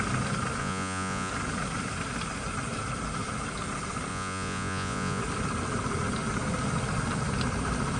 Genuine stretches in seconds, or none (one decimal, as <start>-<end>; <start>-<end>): 0.0-0.6; 1.3-4.1; 5.2-8.0